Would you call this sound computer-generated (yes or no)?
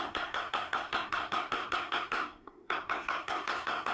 yes